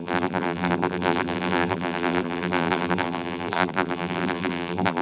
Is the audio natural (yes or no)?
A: no